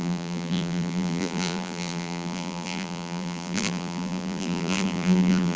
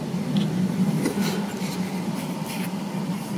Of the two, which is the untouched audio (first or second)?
second